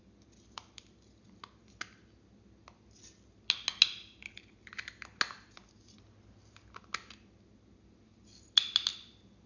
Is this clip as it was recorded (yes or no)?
yes